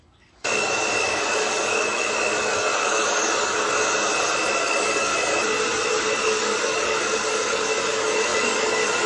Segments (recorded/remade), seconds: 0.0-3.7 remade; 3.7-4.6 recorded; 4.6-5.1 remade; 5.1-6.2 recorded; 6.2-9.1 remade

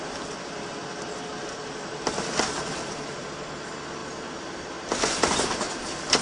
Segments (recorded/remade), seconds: 0.0-1.3 recorded; 1.3-3.2 remade; 3.2-6.2 recorded

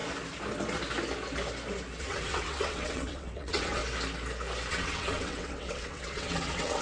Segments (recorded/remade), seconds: 0.0-2.0 recorded; 2.0-3.8 remade; 3.8-4.7 recorded; 4.7-6.8 remade